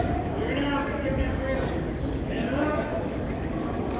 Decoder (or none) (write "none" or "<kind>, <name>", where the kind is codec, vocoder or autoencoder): codec, DAC